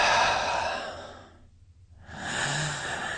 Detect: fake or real real